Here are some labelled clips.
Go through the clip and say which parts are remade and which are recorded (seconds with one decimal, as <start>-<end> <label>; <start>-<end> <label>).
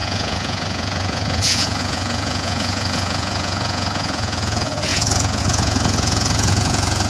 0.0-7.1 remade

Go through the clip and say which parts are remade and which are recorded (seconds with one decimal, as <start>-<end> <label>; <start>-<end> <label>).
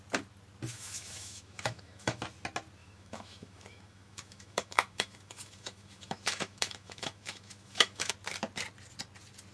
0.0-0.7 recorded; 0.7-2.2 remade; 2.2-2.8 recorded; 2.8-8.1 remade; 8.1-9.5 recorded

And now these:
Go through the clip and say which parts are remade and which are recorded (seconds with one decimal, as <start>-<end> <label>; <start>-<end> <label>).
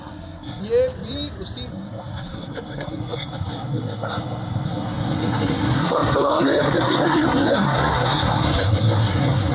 0.0-0.6 remade; 0.6-1.7 recorded; 1.7-9.5 remade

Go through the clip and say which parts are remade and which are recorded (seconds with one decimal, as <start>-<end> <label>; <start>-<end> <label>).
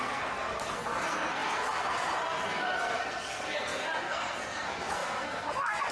0.0-5.9 remade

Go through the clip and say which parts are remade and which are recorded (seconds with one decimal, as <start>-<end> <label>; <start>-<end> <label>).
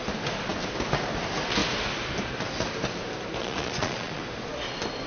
0.0-3.4 recorded; 3.4-4.2 remade; 4.2-5.1 recorded